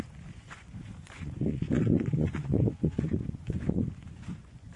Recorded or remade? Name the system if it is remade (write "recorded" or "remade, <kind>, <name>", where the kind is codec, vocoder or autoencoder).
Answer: remade, vocoder, Vocos